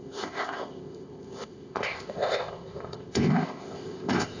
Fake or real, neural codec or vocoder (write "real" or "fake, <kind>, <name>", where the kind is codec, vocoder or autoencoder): fake, codec, ZipCodec